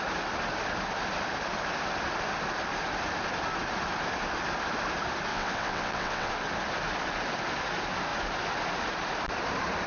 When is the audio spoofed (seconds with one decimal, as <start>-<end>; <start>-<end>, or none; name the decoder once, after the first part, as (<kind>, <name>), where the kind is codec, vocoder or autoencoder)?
5.3-6.3 (vocoder, WaveNeXt)